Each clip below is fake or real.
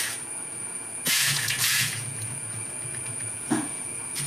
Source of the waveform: fake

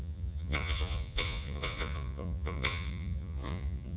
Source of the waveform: fake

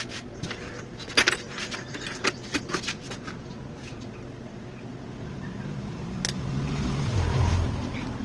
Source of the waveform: real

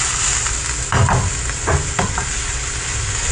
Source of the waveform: real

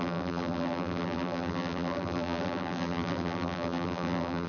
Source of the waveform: fake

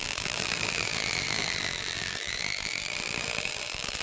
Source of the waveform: fake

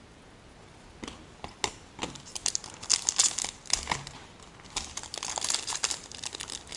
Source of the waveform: real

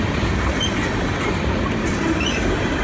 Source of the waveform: real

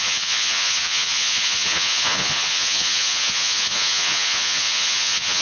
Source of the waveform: fake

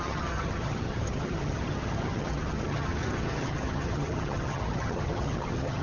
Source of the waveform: fake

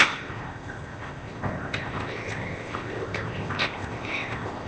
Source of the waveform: fake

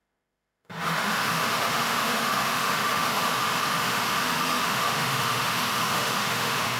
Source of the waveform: fake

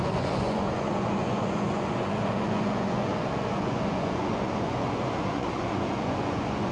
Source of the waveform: fake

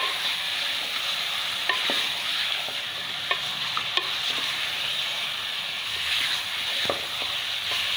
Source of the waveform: real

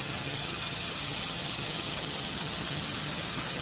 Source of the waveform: fake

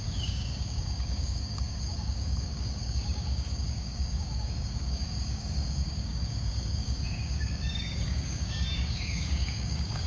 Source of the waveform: fake